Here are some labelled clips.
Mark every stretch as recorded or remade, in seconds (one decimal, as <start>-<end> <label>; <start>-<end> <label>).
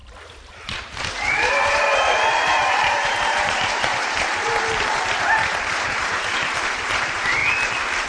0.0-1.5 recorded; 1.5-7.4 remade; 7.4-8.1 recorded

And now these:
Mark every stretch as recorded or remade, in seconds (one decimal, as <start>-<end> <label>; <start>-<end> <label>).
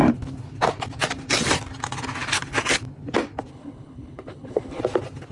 0.0-3.5 recorded; 3.5-4.8 remade; 4.8-5.3 recorded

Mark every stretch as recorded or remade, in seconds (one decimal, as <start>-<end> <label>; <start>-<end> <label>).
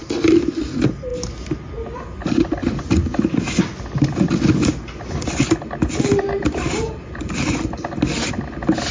0.0-8.9 recorded